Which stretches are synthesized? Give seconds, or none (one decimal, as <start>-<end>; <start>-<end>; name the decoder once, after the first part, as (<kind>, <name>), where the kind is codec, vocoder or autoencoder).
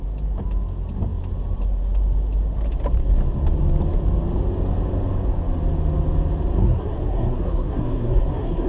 6.6-8.7 (codec, SNAC)